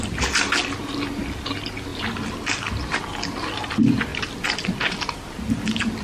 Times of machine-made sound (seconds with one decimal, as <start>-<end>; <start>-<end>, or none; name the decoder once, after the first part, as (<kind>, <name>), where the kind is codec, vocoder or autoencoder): none